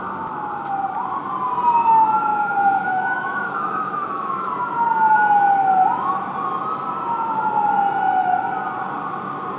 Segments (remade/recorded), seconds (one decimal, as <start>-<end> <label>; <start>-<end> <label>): 0.0-2.3 recorded; 2.3-4.5 remade; 4.5-9.6 recorded